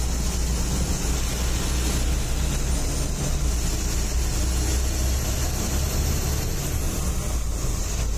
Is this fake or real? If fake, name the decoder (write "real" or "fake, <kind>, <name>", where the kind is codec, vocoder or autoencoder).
real